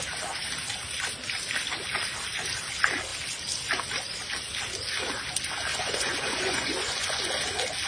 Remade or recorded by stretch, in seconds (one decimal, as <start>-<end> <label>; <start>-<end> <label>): 0.0-5.7 recorded; 5.7-7.3 remade; 7.3-7.9 recorded